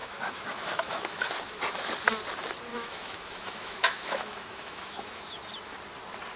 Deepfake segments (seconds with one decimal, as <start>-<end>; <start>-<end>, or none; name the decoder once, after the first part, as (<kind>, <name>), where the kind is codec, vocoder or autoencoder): 0.0-1.3 (autoencoder, DAC-VAE); 2.7-5.4